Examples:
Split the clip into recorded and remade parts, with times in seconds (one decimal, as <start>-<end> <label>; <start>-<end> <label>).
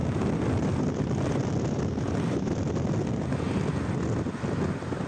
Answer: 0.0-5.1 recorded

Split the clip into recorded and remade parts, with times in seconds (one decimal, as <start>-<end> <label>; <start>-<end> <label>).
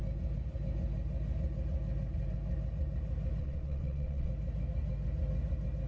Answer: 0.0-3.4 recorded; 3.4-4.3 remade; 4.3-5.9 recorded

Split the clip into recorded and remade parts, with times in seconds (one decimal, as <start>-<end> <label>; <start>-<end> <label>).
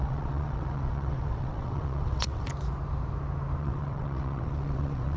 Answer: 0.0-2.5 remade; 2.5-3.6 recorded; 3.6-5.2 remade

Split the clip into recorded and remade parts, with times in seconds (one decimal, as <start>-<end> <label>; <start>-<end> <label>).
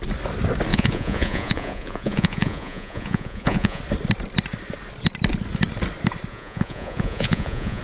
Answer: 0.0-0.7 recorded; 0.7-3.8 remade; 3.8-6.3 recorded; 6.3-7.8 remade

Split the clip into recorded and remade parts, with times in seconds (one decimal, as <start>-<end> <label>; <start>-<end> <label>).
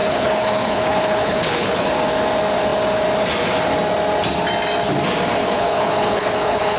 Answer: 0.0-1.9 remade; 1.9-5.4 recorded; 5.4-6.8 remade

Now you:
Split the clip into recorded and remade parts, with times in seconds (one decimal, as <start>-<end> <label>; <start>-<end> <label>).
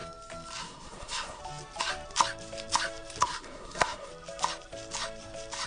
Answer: 0.0-0.6 recorded; 0.6-1.4 remade; 1.4-3.2 recorded; 3.2-4.1 remade; 4.1-5.7 recorded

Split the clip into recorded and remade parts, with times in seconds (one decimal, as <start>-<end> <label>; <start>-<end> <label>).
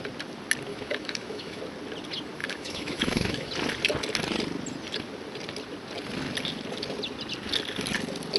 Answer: 0.0-0.7 recorded; 0.7-1.6 remade; 1.6-2.4 recorded; 2.4-3.5 remade; 3.5-8.4 recorded